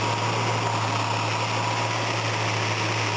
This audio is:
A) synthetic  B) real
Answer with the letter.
B